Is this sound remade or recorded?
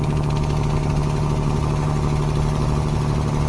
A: recorded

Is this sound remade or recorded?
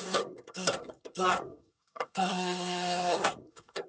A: remade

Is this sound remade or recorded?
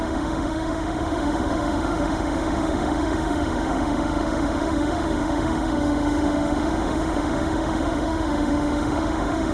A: remade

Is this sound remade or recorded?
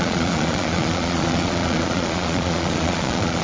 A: remade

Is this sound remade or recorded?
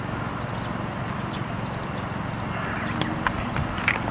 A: recorded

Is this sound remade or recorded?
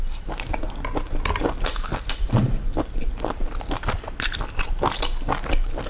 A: recorded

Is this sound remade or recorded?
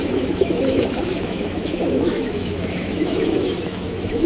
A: remade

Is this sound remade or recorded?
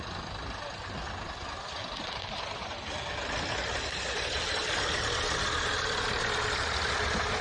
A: recorded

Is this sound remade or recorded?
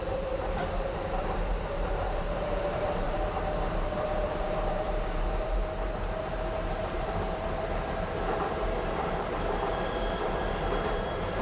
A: remade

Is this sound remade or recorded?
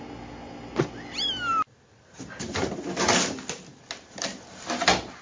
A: recorded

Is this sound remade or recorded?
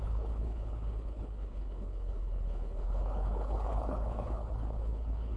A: remade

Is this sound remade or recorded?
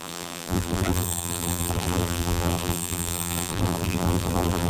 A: remade